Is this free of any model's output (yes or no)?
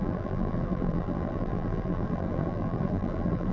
no